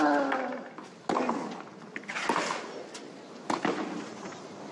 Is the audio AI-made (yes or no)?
no